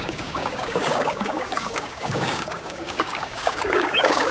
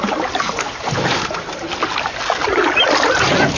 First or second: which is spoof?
first